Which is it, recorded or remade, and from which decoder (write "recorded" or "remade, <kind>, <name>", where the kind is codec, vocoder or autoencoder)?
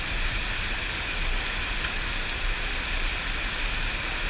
recorded